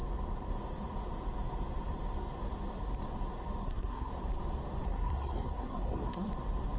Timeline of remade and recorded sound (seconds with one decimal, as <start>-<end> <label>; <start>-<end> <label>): 0.0-3.6 recorded; 3.6-4.1 remade; 4.1-4.8 recorded; 4.8-6.3 remade; 6.3-6.8 recorded